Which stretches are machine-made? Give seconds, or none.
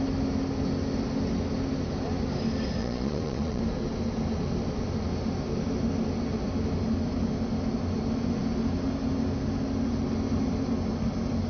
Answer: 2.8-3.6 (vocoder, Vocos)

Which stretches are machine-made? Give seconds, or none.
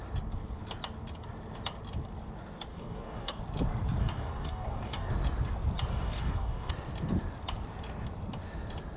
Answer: 2.7-3.4 (codec, DAC); 4.0-5.1; 5.9-6.7